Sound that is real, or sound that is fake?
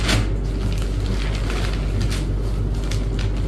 real